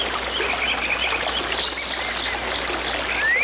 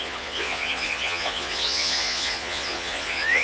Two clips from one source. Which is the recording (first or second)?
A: first